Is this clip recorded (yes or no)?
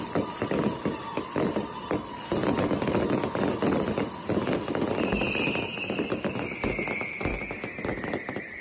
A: yes